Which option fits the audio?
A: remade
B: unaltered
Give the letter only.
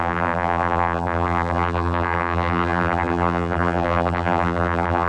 A